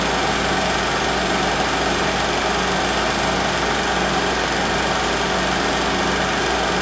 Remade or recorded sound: recorded